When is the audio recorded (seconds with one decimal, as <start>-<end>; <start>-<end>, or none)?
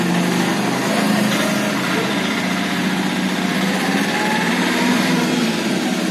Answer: 0.0-6.1